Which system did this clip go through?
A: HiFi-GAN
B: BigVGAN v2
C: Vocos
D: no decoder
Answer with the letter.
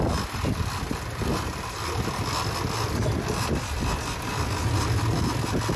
D